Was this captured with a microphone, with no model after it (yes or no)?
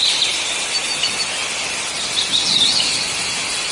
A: yes